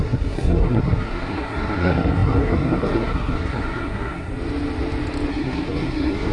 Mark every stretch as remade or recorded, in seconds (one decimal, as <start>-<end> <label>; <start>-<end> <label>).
0.0-4.3 remade; 4.3-5.3 recorded; 5.3-6.3 remade